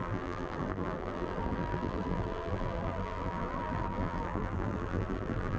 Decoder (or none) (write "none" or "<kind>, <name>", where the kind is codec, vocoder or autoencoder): vocoder, BigVGAN v2